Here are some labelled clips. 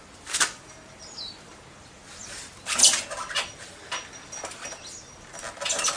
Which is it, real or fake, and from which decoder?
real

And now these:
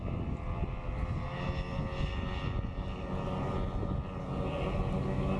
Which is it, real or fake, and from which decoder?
real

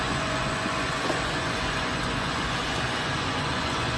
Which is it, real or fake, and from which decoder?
fake, vocoder, Vocos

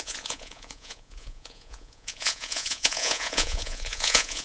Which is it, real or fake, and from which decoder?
fake, vocoder, Vocos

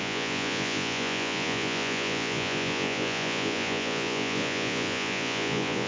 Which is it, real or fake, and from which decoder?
fake, vocoder, Vocos